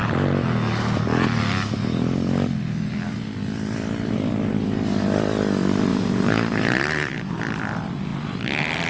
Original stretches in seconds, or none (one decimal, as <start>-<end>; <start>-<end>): 0.0-5.9; 7.3-8.1